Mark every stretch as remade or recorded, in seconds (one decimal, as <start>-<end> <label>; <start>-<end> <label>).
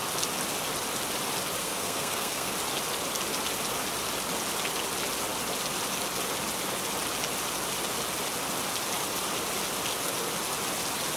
0.0-1.6 recorded; 1.6-2.5 remade; 2.5-11.2 recorded